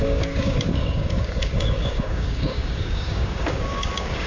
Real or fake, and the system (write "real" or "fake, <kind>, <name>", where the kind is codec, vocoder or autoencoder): fake, codec, DAC